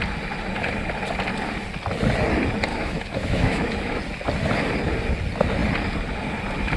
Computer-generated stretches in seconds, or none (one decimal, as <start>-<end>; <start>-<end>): 2.7-4.0